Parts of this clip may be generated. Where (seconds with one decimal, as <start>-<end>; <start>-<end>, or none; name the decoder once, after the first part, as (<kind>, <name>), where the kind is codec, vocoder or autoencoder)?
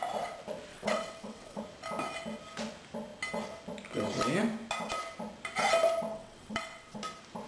0.7-1.6 (vocoder, WaveNeXt); 6.1-7.0